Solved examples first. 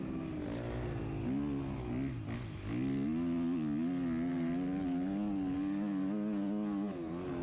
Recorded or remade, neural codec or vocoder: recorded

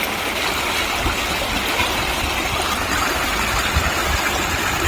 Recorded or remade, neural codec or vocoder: recorded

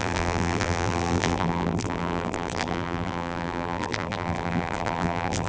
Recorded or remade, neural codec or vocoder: remade, vocoder, BigVGAN v2